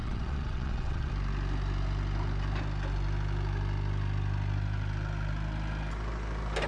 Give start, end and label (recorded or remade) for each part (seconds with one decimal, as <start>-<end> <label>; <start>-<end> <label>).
0.0-1.1 remade; 1.1-6.7 recorded